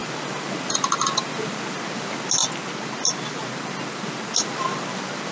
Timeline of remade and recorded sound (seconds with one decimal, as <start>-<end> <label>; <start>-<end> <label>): 0.0-5.3 recorded